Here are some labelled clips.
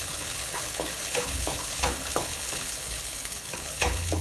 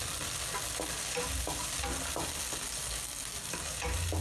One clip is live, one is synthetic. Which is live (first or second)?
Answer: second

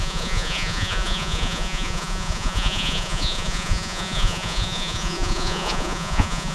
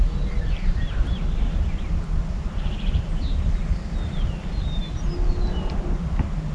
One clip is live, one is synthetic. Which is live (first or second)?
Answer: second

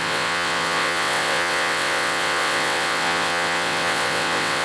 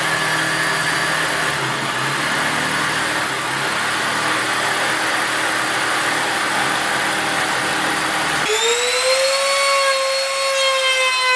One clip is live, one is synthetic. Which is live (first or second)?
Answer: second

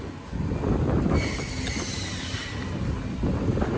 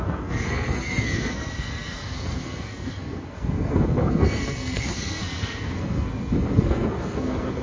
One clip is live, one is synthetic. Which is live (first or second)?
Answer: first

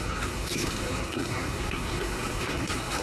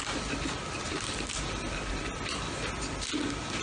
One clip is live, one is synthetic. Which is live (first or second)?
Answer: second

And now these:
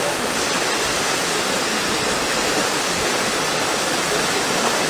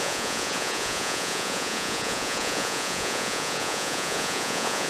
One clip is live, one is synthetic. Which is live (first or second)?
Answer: first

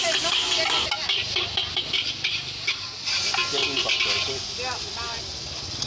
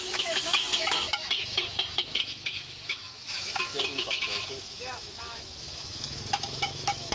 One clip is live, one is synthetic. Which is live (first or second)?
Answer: first